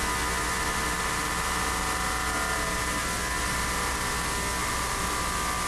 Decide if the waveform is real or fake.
real